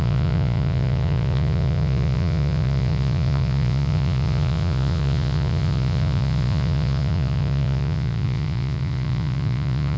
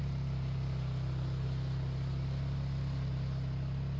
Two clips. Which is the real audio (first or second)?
second